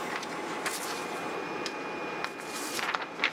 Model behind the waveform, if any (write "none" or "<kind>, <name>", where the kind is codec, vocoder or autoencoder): none